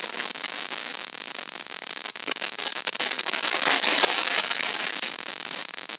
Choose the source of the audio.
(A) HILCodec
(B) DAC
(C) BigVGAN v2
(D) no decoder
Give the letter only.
B